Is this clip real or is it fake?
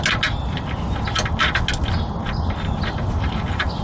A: real